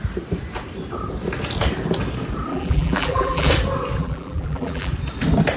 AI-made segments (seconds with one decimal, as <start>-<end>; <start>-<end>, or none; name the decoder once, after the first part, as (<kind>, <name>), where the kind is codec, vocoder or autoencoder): 2.5-3.5 (vocoder, BigVGAN v2); 4.0-4.9

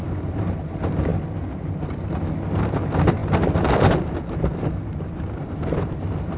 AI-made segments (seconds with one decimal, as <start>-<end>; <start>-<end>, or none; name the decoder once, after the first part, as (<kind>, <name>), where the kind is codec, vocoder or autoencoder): 0.0-1.1 (vocoder, BigVGAN v2); 2.6-3.2; 3.7-6.4